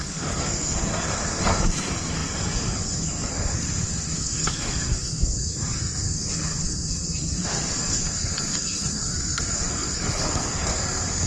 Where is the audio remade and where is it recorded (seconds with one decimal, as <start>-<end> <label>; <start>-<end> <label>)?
0.0-11.3 remade